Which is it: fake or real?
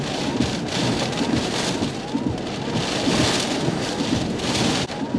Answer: real